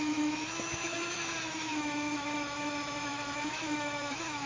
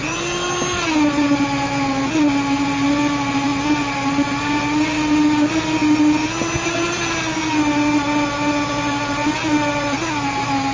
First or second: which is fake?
first